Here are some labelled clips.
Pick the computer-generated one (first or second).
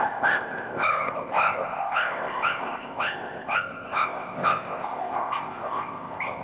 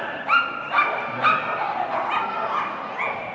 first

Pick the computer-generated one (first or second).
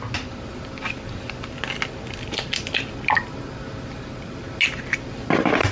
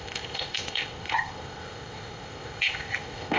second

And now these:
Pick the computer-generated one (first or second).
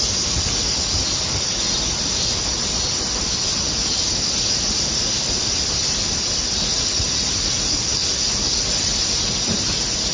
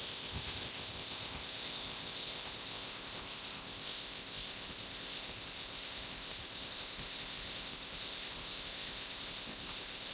second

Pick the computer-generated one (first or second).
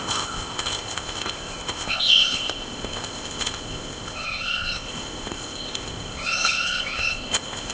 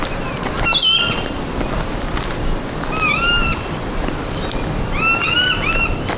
first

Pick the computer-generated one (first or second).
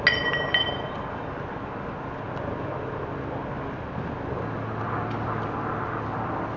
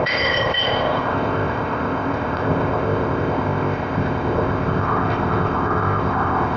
second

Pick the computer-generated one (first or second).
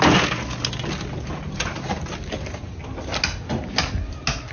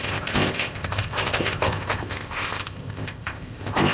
second